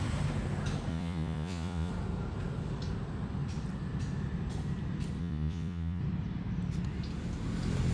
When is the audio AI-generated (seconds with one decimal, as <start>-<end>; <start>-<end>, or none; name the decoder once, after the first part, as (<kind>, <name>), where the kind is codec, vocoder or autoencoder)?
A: 0.9-1.9 (vocoder, Vocos); 5.2-6.0

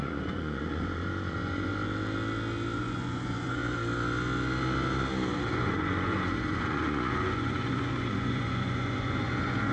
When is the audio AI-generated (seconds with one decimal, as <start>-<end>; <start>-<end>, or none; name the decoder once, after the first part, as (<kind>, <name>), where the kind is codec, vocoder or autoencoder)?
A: 0.0-1.7 (vocoder, Vocos); 2.8-3.6; 5.5-9.7

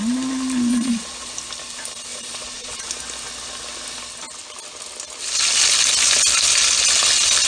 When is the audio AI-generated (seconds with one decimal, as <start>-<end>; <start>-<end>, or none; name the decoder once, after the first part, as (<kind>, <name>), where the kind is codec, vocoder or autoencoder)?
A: 0.7-1.3 (vocoder, Vocos); 2.1-2.9

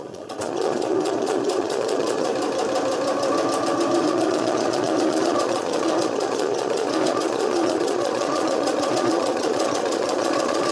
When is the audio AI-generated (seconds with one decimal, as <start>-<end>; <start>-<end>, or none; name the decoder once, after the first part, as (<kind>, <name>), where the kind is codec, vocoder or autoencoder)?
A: 0.0-2.3 (vocoder, Vocos); 4.0-10.7

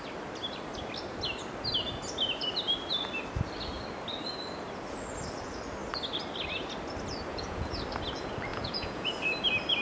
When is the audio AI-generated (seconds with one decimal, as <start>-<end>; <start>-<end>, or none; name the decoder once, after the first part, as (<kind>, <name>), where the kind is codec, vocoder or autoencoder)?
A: 7.3-7.8 (vocoder, Vocos); 8.5-9.1